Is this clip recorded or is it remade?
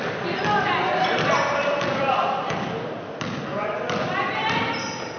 recorded